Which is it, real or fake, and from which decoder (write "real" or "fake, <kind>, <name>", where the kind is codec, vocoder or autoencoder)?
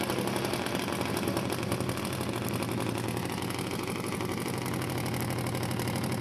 real